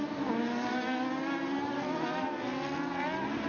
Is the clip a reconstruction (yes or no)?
no